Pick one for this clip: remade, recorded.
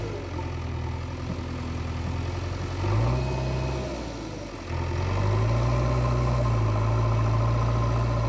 recorded